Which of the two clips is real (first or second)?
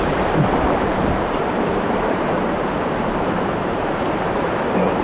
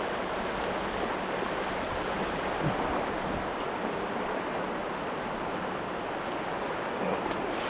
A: second